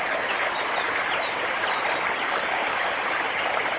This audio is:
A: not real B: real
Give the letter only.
B